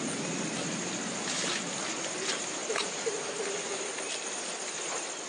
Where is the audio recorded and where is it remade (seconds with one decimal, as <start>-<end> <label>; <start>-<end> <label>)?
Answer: 0.0-2.6 recorded; 2.6-3.2 remade; 3.2-5.3 recorded